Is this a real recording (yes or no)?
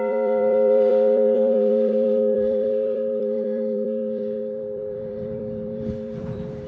no